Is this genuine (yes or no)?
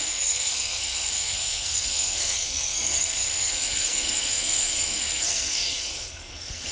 no